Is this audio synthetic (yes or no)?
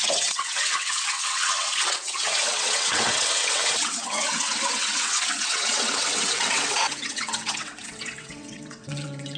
yes